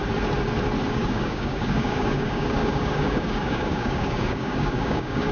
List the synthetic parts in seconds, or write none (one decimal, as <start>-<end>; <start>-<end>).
0.9-5.3